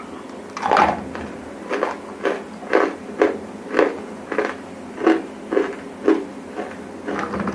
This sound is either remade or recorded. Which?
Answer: recorded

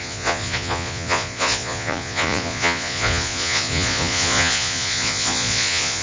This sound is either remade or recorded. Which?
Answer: remade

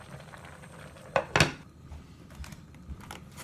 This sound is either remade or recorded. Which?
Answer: recorded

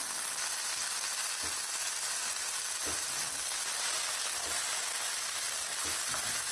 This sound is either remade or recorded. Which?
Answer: recorded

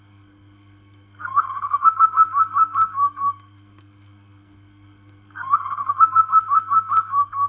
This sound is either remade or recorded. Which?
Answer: remade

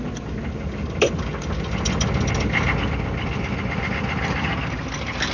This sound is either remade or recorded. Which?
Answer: recorded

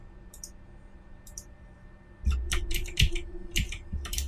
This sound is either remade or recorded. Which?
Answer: remade